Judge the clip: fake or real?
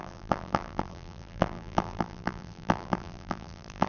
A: fake